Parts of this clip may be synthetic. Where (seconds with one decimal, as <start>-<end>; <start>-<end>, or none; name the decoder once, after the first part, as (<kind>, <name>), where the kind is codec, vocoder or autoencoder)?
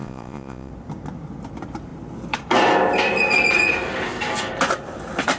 0.0-0.7 (vocoder, Vocos)